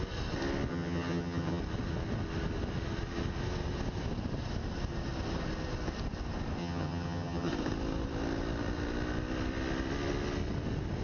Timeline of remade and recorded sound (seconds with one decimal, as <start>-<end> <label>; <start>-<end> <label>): 0.0-0.7 recorded; 0.7-1.6 remade; 1.6-6.6 recorded; 6.6-7.5 remade; 7.5-11.0 recorded